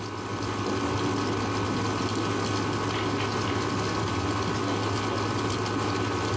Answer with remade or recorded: recorded